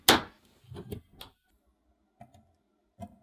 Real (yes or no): yes